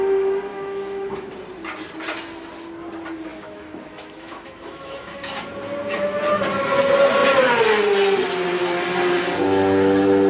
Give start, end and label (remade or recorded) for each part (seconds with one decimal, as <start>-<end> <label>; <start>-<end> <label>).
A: 0.0-0.5 recorded; 0.5-1.3 remade; 1.3-3.3 recorded; 3.3-5.3 remade; 5.3-10.3 recorded